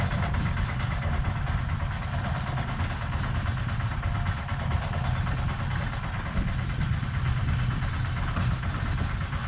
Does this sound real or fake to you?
real